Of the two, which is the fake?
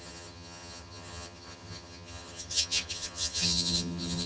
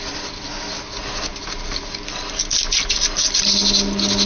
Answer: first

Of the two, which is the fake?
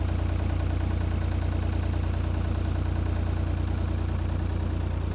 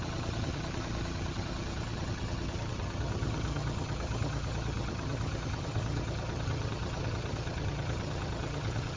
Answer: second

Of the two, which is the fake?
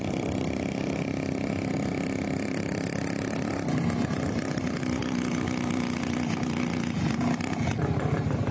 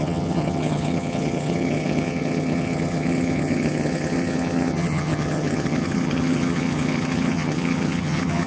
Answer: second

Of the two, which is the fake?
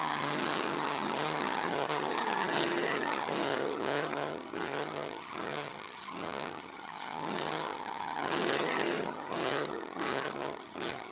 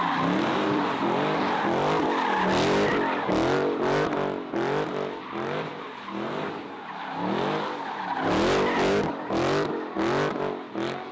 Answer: first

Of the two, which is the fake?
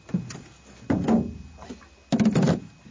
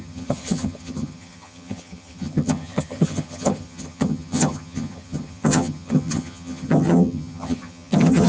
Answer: second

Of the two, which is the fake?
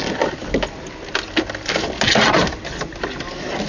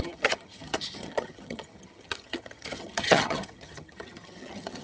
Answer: second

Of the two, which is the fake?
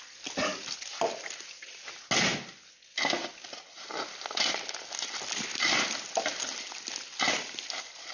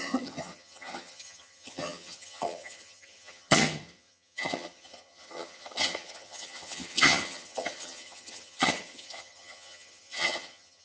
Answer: second